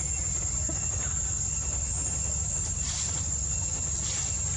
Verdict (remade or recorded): recorded